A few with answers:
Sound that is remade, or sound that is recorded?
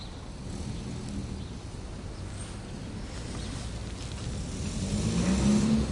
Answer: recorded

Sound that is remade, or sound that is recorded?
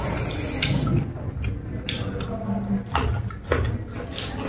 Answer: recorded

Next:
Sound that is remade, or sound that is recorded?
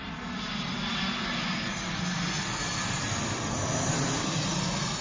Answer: recorded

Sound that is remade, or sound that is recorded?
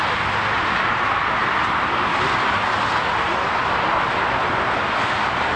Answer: recorded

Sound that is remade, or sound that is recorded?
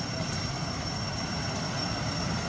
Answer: recorded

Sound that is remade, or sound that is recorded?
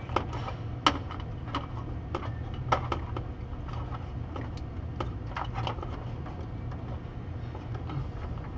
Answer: recorded